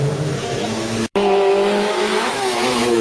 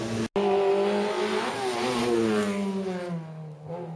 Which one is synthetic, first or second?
first